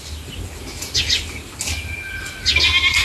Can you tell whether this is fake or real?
real